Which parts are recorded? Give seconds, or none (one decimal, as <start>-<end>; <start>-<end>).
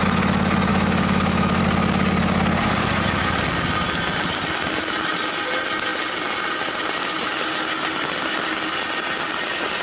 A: 0.0-0.7; 1.6-9.8